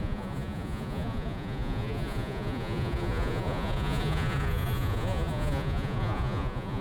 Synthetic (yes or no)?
yes